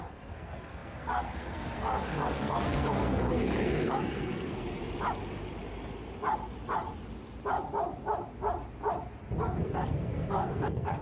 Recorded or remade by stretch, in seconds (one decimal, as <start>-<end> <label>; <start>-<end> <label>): 0.0-4.8 remade; 4.8-9.4 recorded; 9.4-11.0 remade